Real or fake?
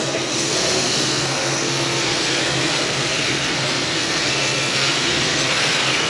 fake